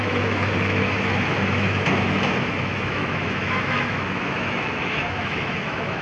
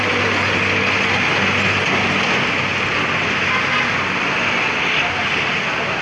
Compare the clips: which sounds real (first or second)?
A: second